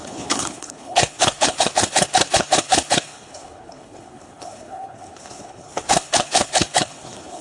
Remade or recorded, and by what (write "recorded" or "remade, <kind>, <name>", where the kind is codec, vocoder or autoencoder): remade, codec, HILCodec